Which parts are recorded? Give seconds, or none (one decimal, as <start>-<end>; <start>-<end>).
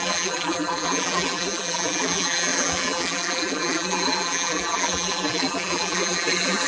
none